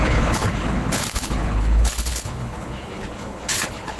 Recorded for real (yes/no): no